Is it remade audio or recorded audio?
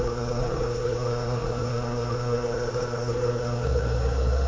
remade